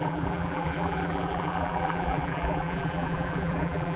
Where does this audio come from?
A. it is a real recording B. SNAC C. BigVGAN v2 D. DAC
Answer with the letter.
C